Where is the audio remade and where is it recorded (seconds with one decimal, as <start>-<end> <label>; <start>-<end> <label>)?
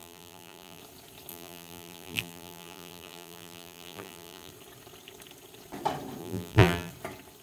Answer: 0.0-0.8 remade; 0.8-1.3 recorded; 1.3-4.5 remade; 4.5-6.2 recorded; 6.2-6.9 remade; 6.9-7.4 recorded